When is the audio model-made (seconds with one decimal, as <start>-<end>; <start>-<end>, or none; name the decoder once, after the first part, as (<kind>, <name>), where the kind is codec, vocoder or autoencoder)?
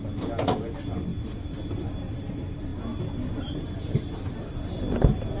0.0-2.7 (vocoder, BigVGAN v2); 3.4-5.4